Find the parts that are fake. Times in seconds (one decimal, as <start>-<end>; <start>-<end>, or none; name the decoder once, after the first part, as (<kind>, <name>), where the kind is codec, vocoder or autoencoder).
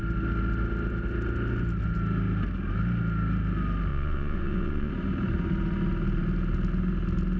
3.9-4.9 (vocoder, Vocos)